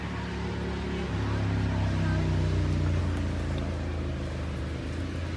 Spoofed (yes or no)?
no